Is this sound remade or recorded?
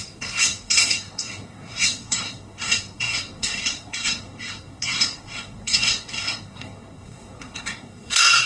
remade